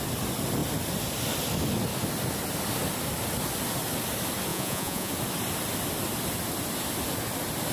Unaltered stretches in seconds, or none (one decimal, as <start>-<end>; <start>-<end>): 0.0-4.5; 5.1-7.7